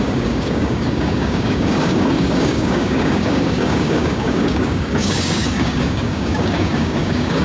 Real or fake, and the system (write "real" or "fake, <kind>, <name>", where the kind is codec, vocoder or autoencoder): fake, codec, DAC